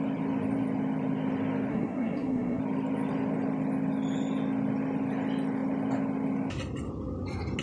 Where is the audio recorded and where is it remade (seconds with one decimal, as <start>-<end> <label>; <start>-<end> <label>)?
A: 0.0-1.7 recorded; 1.7-2.6 remade; 2.6-7.6 recorded

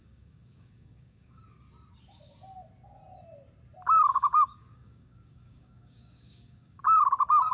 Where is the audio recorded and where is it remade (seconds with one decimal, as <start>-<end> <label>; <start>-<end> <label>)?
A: 0.0-1.4 remade; 1.4-4.1 recorded; 4.1-6.8 remade; 6.8-7.5 recorded

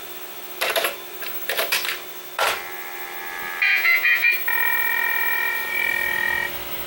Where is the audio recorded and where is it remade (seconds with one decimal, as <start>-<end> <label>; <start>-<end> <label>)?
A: 0.0-3.7 recorded; 3.7-4.3 remade; 4.3-6.9 recorded

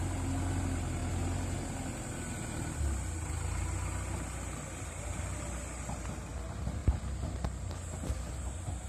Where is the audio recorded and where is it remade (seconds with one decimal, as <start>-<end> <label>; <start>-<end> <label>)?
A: 0.0-8.9 recorded

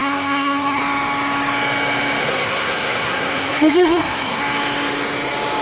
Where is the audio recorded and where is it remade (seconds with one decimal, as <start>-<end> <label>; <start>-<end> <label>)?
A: 0.0-0.8 remade; 0.8-2.2 recorded; 2.2-4.4 remade; 4.4-5.6 recorded

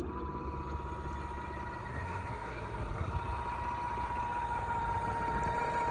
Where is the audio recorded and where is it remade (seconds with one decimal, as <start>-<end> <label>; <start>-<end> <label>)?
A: 0.0-1.9 recorded; 1.9-3.1 remade; 3.1-5.9 recorded